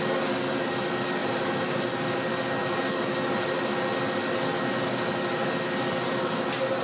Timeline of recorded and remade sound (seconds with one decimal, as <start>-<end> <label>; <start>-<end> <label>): 0.0-1.2 recorded; 1.2-1.8 remade; 1.8-6.8 recorded